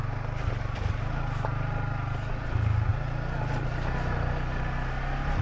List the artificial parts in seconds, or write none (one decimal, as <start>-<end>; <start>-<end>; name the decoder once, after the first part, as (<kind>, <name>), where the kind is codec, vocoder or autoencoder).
none